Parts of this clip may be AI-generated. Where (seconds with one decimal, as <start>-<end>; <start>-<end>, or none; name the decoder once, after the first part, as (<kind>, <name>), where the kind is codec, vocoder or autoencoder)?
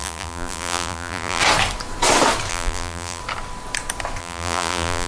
0.0-1.4 (vocoder, BigVGAN v2); 2.5-3.2; 4.2-5.1